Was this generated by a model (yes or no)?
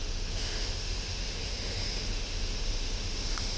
yes